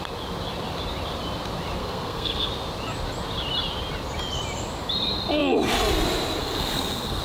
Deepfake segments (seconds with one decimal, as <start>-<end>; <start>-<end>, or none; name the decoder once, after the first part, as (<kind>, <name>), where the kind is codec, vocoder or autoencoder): 1.8-2.5 (codec, SNAC); 6.4-7.2